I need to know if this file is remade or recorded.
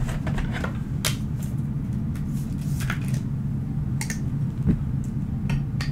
recorded